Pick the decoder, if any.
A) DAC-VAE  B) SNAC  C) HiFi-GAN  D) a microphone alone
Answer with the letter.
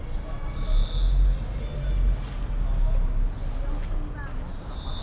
D